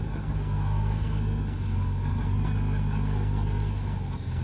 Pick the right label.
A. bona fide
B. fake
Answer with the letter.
B